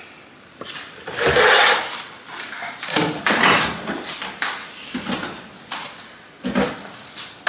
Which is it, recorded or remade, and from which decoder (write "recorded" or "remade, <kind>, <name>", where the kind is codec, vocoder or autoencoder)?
recorded